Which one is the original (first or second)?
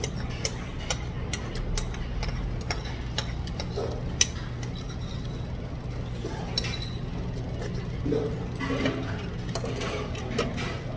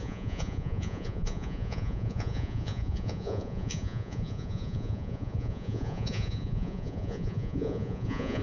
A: first